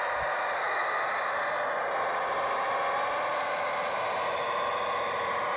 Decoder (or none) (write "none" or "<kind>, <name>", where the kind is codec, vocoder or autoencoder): none